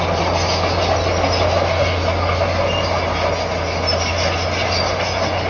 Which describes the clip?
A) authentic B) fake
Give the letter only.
A